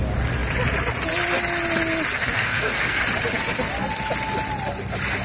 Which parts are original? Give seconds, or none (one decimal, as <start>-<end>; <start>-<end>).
0.0-2.2; 3.0-5.2